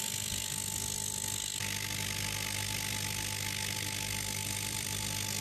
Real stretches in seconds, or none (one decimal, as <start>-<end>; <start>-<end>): 0.0-4.4; 5.0-5.4